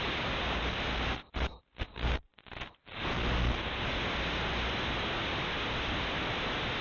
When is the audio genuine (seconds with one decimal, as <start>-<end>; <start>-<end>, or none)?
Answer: 0.6-1.9; 2.3-6.8